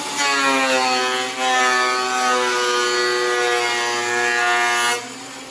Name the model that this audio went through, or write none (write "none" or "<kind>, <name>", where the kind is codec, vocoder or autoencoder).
none